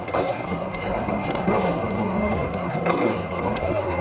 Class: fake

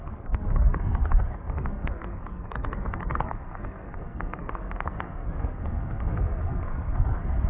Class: fake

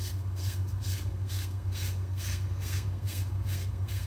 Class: fake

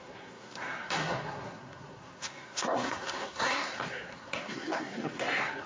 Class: fake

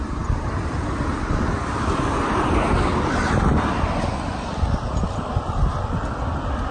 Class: real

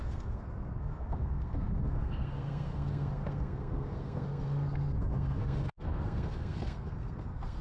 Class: fake